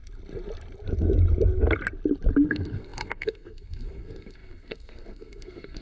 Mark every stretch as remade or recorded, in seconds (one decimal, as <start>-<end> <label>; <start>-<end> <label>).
0.0-2.5 recorded; 2.5-5.8 remade